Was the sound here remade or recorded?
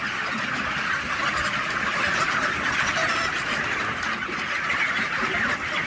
recorded